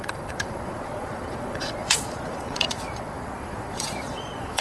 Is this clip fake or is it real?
fake